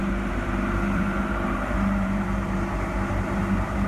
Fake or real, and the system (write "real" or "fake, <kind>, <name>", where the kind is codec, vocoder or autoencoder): fake, vocoder, BigVGAN v2